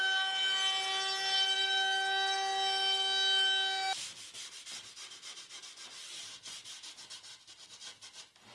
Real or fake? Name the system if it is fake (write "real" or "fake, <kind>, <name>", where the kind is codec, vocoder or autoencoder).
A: real